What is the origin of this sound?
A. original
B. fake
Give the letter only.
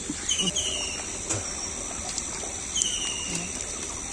A